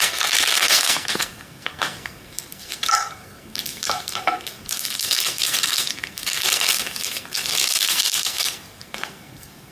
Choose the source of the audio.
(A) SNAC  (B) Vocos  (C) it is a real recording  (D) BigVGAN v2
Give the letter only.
A